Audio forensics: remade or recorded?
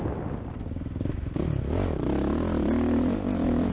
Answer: recorded